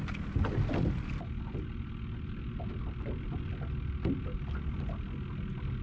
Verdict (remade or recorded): recorded